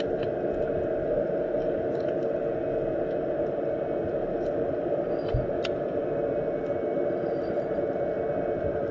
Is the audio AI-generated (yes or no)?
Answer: no